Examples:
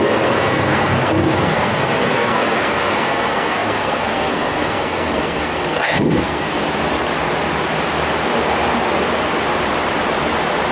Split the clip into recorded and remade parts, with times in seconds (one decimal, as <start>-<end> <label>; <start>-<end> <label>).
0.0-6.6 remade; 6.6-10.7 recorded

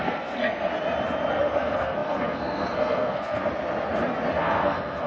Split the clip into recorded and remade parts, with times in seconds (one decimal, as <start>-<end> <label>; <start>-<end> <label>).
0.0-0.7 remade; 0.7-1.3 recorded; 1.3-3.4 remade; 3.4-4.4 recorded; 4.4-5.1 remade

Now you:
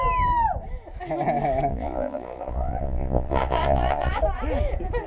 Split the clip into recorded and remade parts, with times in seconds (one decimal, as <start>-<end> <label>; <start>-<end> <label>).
0.0-1.7 recorded; 1.7-4.2 remade; 4.2-5.1 recorded